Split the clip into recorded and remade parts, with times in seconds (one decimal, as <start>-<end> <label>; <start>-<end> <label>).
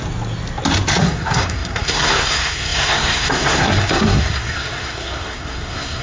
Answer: 0.0-1.0 recorded; 1.0-6.0 remade